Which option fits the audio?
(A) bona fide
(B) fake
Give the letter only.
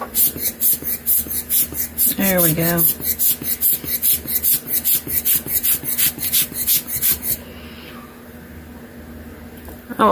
A